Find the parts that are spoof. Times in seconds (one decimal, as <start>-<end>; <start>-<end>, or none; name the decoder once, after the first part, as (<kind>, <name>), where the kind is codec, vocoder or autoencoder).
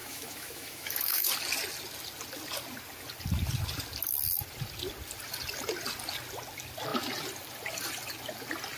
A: 0.0-1.3 (autoencoder, DAC-VAE)